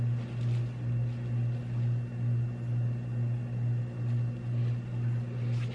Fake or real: real